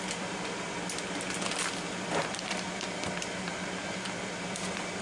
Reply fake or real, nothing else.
real